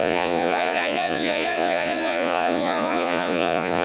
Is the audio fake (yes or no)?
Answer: yes